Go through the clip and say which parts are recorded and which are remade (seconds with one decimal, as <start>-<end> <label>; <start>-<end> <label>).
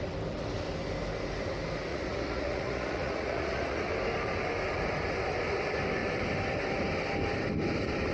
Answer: 0.0-1.9 recorded; 1.9-3.9 remade; 3.9-8.1 recorded